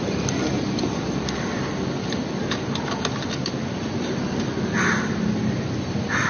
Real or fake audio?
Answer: fake